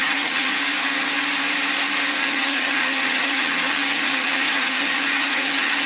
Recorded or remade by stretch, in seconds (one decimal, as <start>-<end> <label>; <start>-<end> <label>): 0.0-0.5 remade; 0.5-2.2 recorded; 2.2-5.9 remade